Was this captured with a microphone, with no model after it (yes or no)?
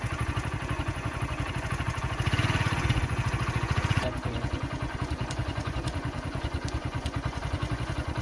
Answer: no